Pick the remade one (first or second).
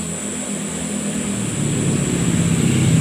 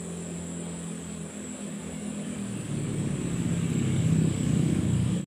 second